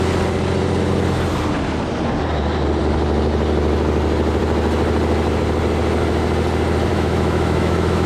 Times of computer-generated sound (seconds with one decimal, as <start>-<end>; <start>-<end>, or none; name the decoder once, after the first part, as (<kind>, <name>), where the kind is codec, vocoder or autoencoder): 6.9-8.1 (autoencoder, DAC-VAE)